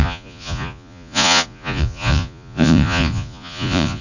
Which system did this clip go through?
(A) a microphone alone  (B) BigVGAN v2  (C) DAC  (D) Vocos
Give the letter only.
D